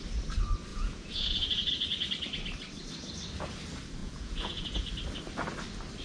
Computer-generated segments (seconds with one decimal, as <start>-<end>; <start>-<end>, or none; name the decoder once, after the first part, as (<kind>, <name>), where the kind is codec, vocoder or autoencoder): 0.7-1.7 (vocoder, Vocos); 4.0-4.9